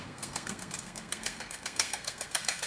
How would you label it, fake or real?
fake